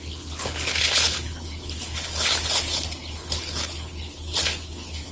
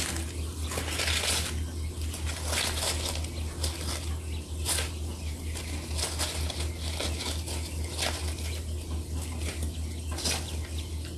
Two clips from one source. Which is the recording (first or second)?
second